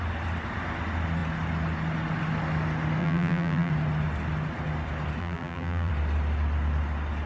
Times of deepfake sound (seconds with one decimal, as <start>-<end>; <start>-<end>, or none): 3.0-3.7; 5.2-5.9